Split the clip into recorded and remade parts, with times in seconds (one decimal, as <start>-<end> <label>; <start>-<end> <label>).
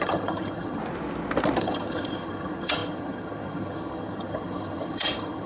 0.0-0.8 remade; 0.8-1.6 recorded; 1.6-5.5 remade